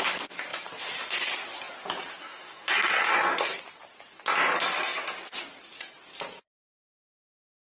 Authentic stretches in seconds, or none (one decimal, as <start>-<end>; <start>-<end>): 0.0-2.2; 3.0-7.7